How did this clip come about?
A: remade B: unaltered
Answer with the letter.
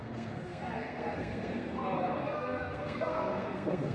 A